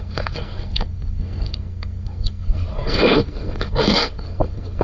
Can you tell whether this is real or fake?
fake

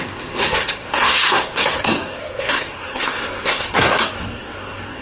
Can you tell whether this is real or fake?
fake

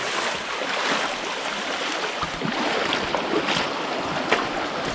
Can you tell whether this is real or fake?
real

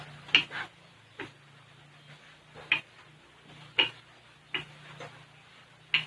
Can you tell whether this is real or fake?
real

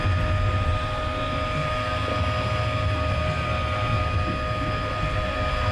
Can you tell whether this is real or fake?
real